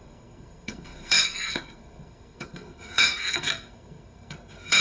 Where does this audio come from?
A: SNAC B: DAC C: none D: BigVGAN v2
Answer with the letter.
A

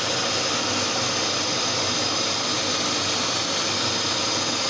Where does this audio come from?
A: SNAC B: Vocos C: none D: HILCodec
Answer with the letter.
C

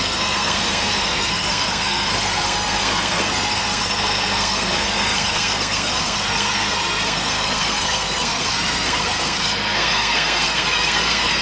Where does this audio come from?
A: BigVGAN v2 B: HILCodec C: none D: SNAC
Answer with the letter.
D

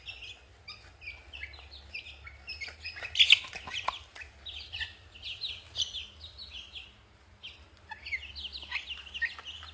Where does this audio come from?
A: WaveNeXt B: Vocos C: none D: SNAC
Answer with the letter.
C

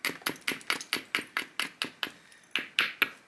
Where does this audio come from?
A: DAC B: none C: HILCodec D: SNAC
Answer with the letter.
B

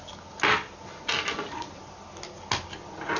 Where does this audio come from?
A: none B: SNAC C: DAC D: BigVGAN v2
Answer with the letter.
A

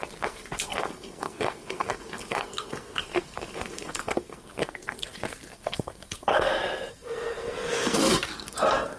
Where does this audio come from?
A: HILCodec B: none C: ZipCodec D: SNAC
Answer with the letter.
D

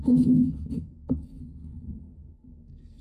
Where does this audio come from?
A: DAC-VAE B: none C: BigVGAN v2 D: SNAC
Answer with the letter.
D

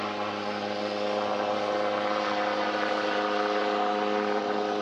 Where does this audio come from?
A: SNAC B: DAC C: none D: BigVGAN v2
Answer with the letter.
C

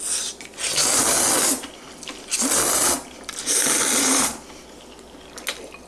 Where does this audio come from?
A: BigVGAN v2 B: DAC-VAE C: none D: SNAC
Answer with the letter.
C